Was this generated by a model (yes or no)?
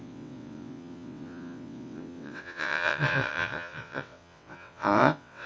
yes